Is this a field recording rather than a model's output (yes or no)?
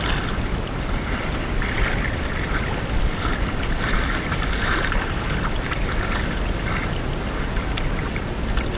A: yes